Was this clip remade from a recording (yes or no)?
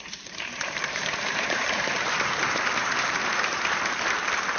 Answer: yes